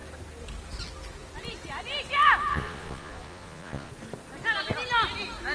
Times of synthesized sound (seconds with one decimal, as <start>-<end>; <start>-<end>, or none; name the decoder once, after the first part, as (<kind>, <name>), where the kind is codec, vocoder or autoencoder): 2.5-3.9 (vocoder, Vocos)